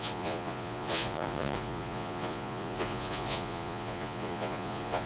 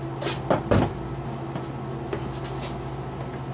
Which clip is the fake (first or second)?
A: first